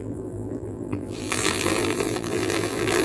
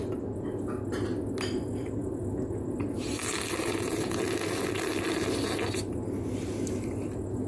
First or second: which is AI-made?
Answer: first